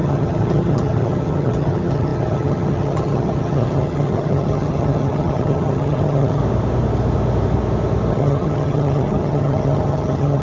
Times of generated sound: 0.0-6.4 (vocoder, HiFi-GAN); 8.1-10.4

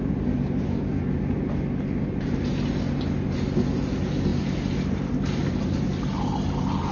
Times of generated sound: none

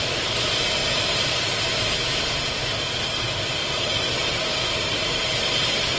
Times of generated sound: 0.0-2.6 (vocoder, BigVGAN v2); 3.2-6.0

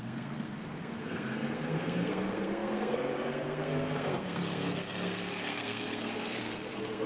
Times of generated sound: 0.0-7.1 (codec, SNAC)

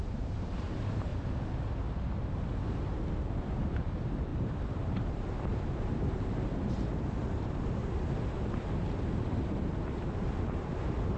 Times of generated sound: 0.0-1.1 (vocoder, BigVGAN v2); 3.2-11.2

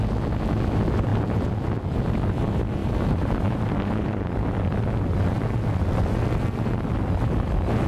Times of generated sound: 2.8-3.7 (vocoder, BigVGAN v2)

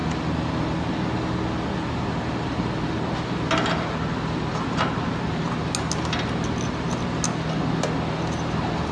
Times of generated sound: none